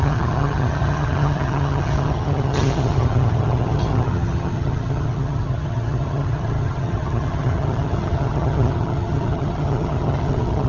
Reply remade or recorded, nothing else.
remade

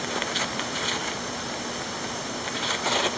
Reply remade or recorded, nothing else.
recorded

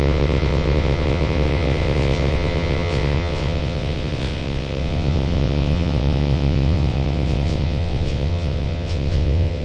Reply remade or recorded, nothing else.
remade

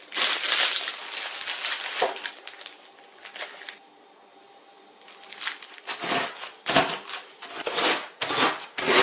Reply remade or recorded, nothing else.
recorded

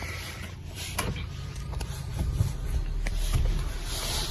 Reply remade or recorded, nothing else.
remade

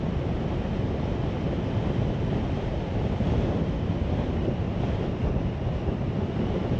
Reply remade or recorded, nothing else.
recorded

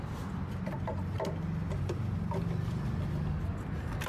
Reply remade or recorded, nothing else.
recorded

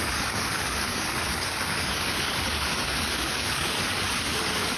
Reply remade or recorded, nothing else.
remade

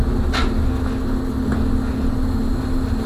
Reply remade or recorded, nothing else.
recorded